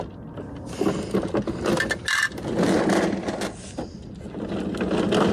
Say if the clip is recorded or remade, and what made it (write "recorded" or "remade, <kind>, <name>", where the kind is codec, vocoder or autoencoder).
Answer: recorded